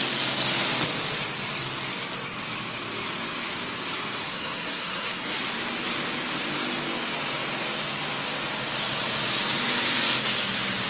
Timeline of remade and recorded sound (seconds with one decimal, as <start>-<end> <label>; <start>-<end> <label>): 0.0-4.2 recorded; 4.2-5.4 remade; 5.4-10.9 recorded

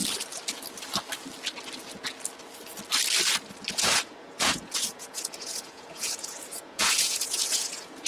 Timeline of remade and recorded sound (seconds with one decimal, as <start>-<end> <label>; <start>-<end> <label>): 0.0-3.7 recorded; 3.7-8.1 remade

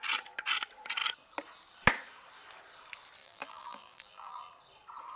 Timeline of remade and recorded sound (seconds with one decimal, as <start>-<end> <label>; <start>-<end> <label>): 0.0-3.2 recorded; 3.2-4.5 remade; 4.5-5.2 recorded